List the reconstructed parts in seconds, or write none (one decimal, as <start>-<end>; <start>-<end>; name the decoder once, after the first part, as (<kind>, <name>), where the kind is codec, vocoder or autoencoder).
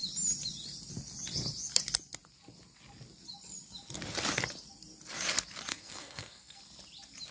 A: 5.7-6.6 (codec, SNAC)